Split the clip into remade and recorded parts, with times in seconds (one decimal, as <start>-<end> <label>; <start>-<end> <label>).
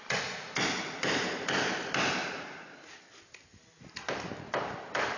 0.0-2.2 recorded; 2.2-3.0 remade; 3.0-5.2 recorded